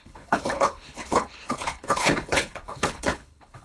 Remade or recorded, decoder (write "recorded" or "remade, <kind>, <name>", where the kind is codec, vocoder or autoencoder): remade, codec, HILCodec